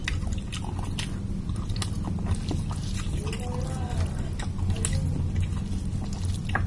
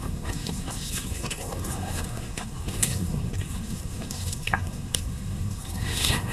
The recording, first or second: first